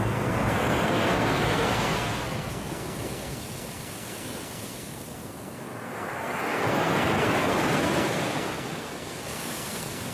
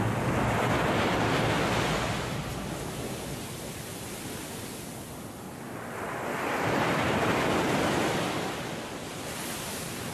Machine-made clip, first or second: first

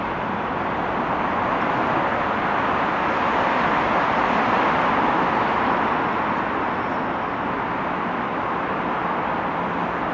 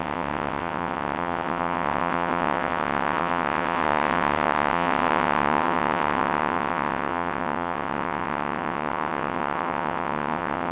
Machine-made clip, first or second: second